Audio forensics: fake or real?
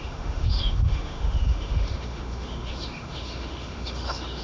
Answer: fake